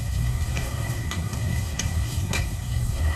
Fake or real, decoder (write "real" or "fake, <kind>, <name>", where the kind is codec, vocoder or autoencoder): fake, codec, SNAC